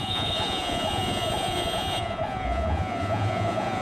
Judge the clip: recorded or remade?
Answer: remade